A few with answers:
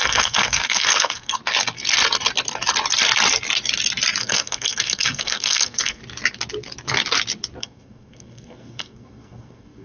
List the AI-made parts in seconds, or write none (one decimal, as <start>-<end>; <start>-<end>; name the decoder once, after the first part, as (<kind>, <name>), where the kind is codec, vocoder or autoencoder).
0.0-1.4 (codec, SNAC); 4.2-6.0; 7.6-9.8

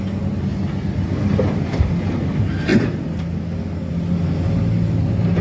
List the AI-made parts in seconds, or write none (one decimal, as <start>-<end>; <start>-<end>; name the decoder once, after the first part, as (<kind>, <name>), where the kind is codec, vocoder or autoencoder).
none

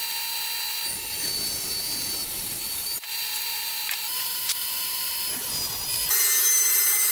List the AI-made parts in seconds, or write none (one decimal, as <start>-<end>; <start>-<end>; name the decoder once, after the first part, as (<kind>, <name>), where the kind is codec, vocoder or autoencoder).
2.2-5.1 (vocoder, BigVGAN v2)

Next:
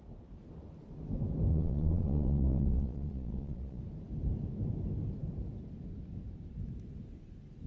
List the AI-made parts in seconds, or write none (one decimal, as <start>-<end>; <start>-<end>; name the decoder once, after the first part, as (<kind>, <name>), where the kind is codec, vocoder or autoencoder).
1.5-3.8 (vocoder, Vocos)

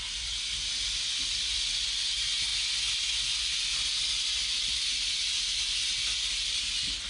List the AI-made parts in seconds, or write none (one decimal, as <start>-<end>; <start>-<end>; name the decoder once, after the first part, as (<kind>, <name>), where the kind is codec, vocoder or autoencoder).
none

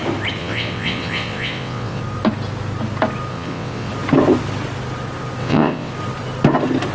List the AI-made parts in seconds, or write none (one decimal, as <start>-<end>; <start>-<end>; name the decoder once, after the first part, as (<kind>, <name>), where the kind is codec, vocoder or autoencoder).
0.4-2.0 (vocoder, WaveNeXt); 3.3-3.9; 5.4-5.9

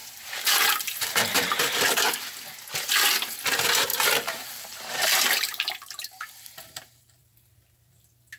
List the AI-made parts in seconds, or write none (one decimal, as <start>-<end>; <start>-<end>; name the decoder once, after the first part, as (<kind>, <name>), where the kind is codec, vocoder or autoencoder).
0.0-1.9 (vocoder, BigVGAN v2); 3.9-8.0

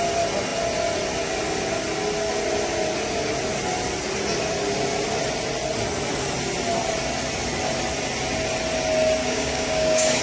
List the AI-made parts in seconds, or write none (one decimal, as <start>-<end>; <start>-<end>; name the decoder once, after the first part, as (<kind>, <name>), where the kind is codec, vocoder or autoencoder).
9.2-10.2 (codec, DAC)